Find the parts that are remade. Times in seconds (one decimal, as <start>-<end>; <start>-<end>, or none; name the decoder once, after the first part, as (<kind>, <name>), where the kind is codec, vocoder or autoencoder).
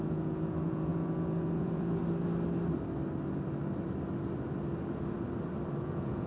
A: 0.0-2.0 (vocoder, Vocos); 5.8-6.3